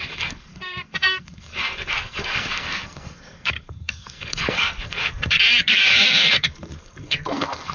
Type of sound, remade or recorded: remade